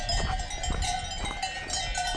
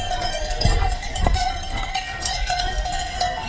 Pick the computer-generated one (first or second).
second